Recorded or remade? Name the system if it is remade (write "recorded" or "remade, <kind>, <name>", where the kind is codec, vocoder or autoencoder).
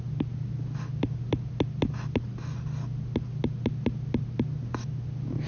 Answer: recorded